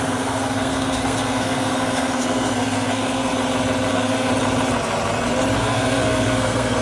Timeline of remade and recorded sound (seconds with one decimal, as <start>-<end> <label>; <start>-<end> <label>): 0.0-3.3 remade; 3.3-3.9 recorded; 3.9-4.3 remade; 4.3-5.6 recorded; 5.6-6.8 remade